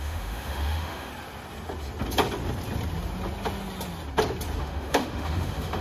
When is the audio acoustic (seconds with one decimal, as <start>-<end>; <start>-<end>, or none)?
1.1-4.6